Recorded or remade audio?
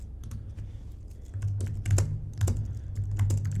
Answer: recorded